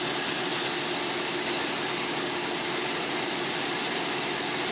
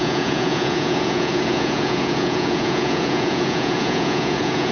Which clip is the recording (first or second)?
first